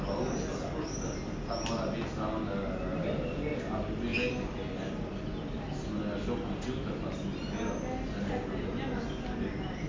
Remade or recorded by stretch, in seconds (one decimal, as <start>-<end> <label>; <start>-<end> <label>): 0.0-9.9 recorded